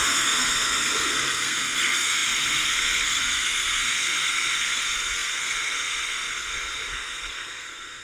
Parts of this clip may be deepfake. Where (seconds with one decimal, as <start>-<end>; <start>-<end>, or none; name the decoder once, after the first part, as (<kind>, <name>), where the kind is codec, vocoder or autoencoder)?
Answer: 0.0-8.0 (codec, SNAC)